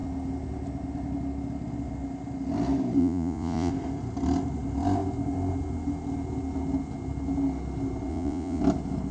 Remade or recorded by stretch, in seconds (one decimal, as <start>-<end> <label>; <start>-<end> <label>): 0.0-3.0 recorded; 3.0-3.7 remade; 3.7-8.1 recorded; 8.1-8.6 remade; 8.6-9.1 recorded